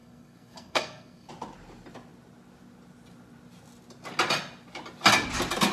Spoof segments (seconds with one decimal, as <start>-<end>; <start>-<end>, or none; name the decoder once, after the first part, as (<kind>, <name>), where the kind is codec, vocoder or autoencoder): 0.0-1.3 (codec, SNAC)